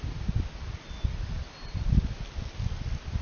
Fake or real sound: real